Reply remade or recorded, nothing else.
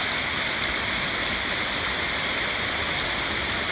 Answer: recorded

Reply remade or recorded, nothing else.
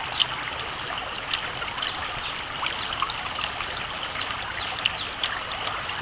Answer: recorded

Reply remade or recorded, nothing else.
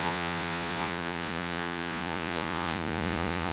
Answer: remade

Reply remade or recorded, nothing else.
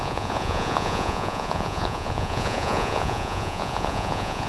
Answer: remade